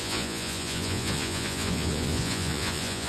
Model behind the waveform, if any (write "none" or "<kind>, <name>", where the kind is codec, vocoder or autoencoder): vocoder, Vocos